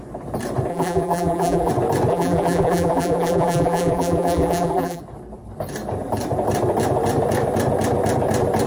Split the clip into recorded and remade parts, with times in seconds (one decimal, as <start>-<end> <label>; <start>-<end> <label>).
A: 0.0-0.7 recorded; 0.7-1.7 remade; 1.7-2.1 recorded; 2.1-5.0 remade; 5.0-8.7 recorded